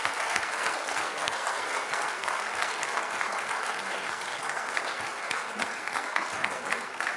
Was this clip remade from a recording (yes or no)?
yes